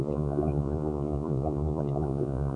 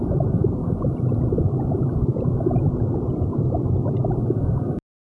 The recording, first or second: second